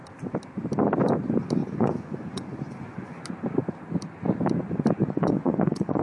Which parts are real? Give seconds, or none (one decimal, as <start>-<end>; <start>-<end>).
0.0-1.6; 3.2-5.0